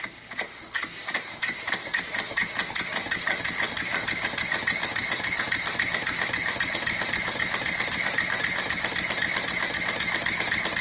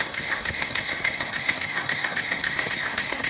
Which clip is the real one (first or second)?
first